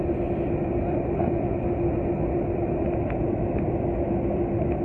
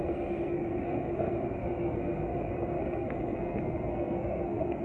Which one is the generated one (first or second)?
second